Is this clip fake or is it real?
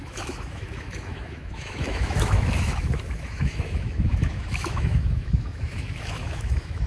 fake